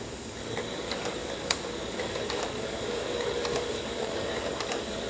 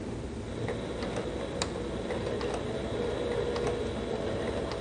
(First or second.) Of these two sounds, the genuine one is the second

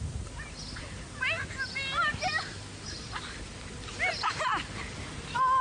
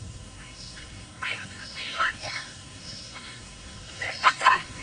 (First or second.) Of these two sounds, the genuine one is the first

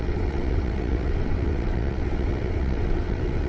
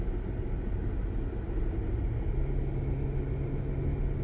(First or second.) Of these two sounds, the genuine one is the second